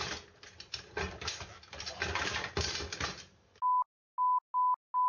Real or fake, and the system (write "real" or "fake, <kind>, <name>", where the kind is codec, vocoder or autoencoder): real